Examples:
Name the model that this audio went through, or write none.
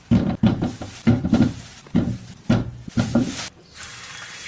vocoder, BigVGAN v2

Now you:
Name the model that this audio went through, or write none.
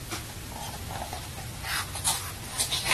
none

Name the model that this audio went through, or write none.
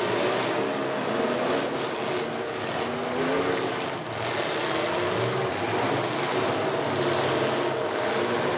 none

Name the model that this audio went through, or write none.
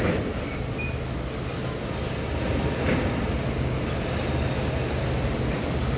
none